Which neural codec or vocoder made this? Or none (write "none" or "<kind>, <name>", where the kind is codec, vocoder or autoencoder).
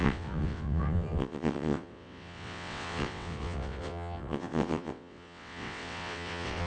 vocoder, WaveNeXt